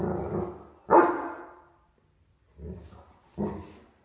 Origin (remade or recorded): recorded